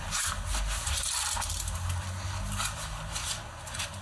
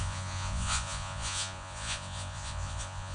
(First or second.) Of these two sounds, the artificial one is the second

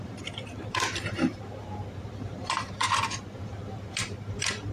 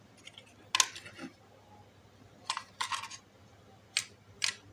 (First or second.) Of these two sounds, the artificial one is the first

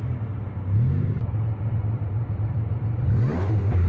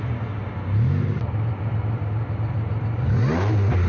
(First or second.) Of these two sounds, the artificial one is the first